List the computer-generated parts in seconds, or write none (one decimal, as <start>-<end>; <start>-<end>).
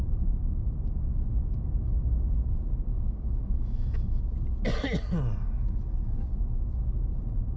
2.9-4.2